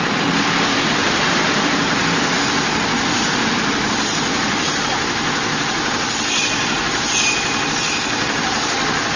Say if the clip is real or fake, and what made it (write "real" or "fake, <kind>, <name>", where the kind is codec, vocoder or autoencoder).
real